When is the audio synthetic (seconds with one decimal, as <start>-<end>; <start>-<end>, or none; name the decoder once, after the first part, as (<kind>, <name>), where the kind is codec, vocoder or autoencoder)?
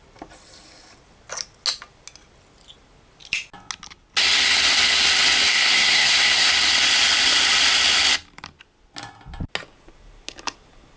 5.5-6.5 (codec, SNAC)